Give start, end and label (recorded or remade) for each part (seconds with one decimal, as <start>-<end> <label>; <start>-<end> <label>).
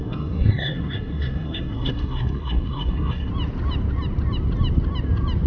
0.0-3.3 remade; 3.3-5.5 recorded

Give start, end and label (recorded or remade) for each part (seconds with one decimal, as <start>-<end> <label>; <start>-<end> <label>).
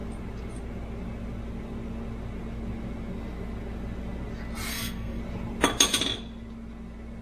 0.0-4.7 recorded; 4.7-5.2 remade; 5.2-7.2 recorded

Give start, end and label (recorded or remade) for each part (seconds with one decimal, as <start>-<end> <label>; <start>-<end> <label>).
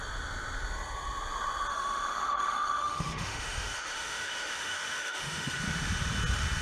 0.0-1.7 recorded; 1.7-5.6 remade; 5.6-6.6 recorded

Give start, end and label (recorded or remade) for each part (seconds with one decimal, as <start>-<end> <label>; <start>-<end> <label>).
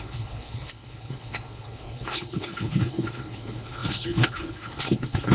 0.0-5.3 remade